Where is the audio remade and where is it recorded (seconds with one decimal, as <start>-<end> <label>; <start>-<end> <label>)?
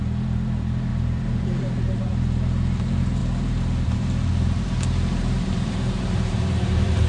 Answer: 0.0-0.9 recorded; 0.9-2.1 remade; 2.1-3.2 recorded; 3.2-7.1 remade